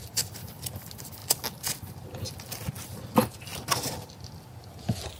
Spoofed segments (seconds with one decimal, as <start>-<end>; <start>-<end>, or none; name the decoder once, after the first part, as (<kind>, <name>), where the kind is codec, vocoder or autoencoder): 0.0-0.7 (vocoder, BigVGAN v2)